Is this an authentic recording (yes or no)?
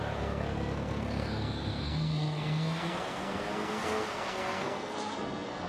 no